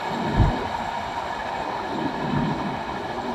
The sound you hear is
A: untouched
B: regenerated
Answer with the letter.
A